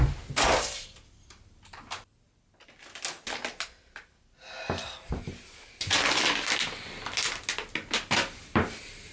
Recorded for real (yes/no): yes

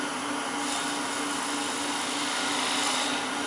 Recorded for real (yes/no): yes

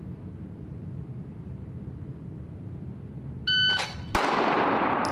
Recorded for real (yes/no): yes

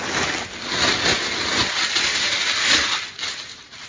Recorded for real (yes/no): yes